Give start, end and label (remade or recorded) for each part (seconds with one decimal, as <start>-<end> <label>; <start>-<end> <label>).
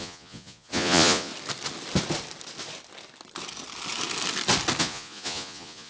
0.0-1.3 remade; 1.3-4.8 recorded; 4.8-5.9 remade